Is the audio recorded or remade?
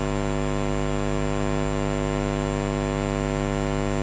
recorded